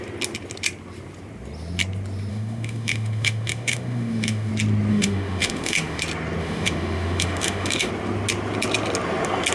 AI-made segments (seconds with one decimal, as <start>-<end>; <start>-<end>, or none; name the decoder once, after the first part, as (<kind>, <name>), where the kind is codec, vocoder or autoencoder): 2.3-4.5 (autoencoder, DAC-VAE); 4.9-6.0; 6.4-7.9